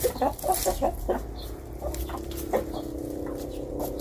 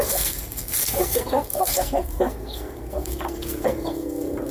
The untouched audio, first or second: first